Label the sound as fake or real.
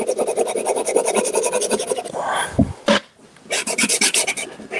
real